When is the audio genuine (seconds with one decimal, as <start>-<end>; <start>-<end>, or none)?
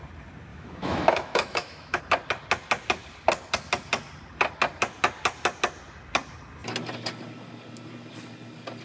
0.0-0.5; 2.0-8.8